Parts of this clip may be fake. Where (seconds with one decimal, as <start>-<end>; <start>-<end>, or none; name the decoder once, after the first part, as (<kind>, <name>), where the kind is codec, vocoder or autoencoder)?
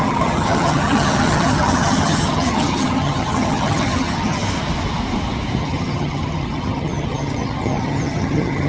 0.0-4.4 (vocoder, HiFi-GAN); 5.6-8.7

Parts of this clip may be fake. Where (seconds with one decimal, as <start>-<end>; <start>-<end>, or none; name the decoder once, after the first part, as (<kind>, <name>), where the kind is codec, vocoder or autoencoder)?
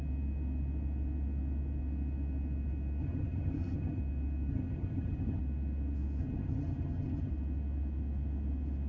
3.0-4.0 (vocoder, HiFi-GAN); 4.5-5.4; 6.2-7.3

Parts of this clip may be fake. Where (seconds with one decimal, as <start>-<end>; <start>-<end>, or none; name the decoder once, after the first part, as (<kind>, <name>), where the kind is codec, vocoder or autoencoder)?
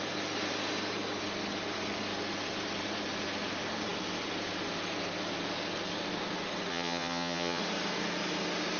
6.7-7.6 (vocoder, HiFi-GAN)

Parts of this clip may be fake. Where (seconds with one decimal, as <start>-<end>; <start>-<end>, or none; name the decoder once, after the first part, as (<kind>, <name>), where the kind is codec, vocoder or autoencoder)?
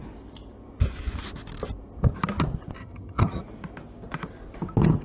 2.8-3.4 (vocoder, HiFi-GAN)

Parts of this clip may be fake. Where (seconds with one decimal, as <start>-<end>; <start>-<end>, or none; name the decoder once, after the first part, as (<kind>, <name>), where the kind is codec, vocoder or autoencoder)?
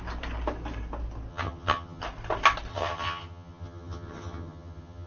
1.3-2.0 (vocoder, HiFi-GAN); 2.7-5.1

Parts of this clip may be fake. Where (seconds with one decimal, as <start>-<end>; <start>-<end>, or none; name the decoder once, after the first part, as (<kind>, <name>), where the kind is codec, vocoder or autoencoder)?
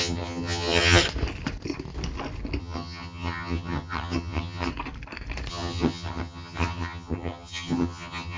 0.0-1.0 (vocoder, HiFi-GAN); 2.6-4.7; 5.5-8.4